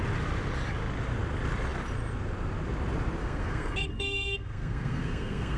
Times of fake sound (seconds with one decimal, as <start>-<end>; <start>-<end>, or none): 3.2-5.6